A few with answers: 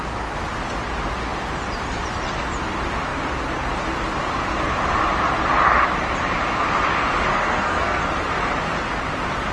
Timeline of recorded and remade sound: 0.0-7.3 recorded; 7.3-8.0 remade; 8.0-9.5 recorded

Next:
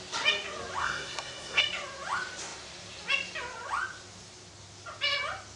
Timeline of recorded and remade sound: 0.0-0.8 recorded; 0.8-1.6 remade; 1.6-5.6 recorded